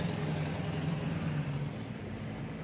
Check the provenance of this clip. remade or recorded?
recorded